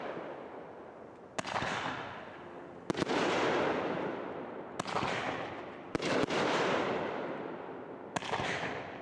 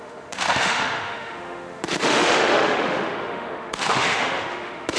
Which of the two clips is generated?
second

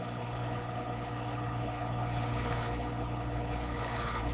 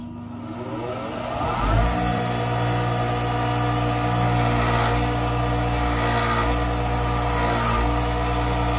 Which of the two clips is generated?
first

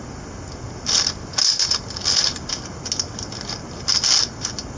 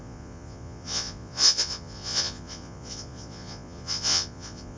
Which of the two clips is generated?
second